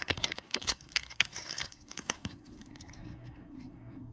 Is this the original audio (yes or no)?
no